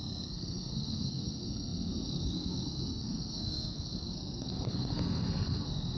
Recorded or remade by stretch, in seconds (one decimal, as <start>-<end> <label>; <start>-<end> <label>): 0.0-6.0 remade